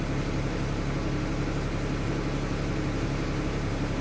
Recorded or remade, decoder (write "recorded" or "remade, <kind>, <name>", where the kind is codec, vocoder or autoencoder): recorded